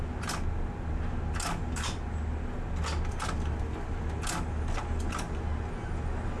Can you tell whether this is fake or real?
real